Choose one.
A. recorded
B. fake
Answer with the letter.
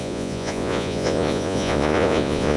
B